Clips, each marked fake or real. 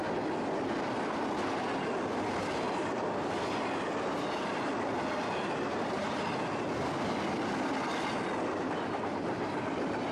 real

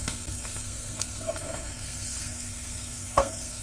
fake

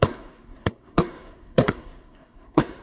fake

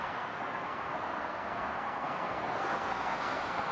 fake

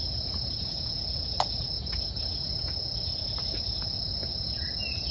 real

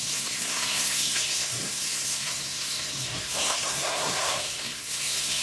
fake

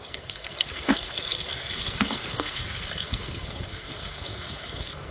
fake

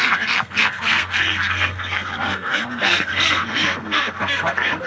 fake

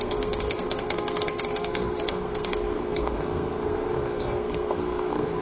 fake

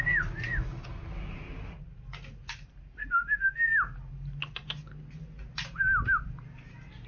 real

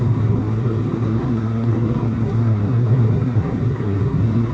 fake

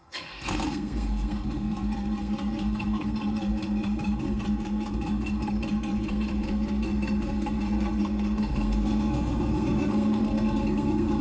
fake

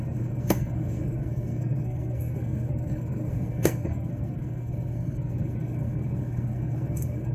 fake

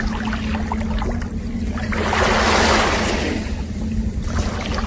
real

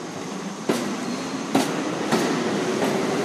real